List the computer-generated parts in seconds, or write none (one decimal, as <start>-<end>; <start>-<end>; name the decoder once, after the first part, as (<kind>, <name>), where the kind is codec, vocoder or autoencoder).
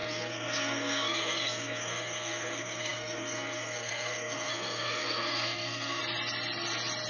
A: 0.0-6.0 (codec, SNAC)